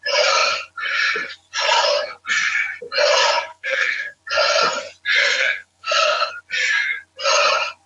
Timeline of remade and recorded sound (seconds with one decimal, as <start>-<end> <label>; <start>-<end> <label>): 0.0-3.5 recorded; 3.5-4.2 remade; 4.2-5.2 recorded; 5.2-6.3 remade; 6.3-7.9 recorded